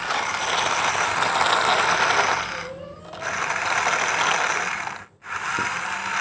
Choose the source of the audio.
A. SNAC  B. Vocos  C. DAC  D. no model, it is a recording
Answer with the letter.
D